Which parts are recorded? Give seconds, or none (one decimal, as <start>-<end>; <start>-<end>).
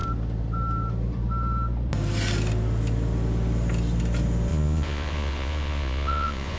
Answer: 0.0-4.5